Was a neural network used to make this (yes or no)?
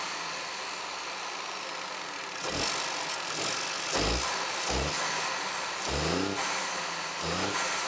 no